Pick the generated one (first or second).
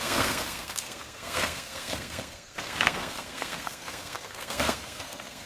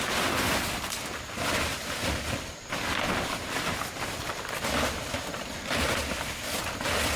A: first